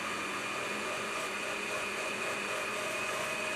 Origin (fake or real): fake